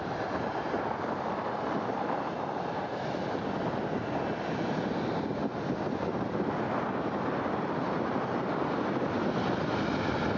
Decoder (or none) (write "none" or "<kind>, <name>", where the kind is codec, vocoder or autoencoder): none